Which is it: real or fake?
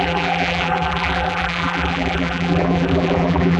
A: fake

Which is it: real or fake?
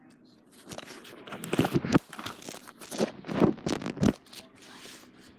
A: real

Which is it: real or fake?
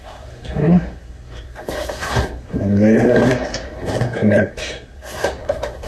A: fake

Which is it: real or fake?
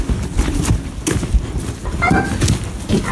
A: real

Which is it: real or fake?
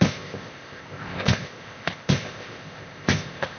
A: fake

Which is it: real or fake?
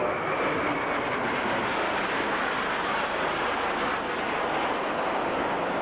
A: real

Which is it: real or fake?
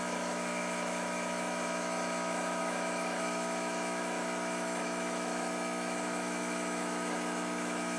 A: fake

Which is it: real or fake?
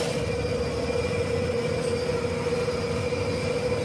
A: real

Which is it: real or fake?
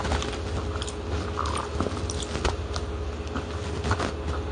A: real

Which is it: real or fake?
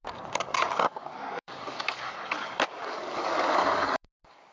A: fake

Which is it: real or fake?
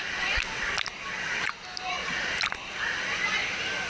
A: real